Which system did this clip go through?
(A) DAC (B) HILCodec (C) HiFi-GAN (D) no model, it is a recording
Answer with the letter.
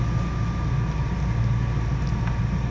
D